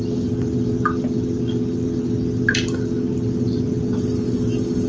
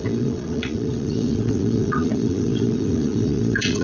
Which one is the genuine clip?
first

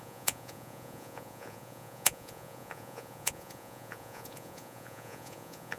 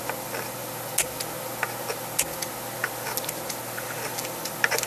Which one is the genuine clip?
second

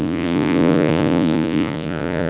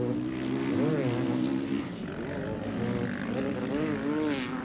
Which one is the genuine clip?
second